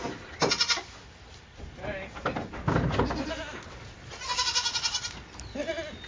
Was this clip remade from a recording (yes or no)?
no